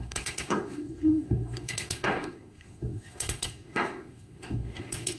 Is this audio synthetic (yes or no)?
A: yes